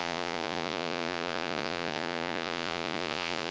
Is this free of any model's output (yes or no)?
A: no